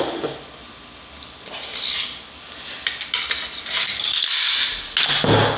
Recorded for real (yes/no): yes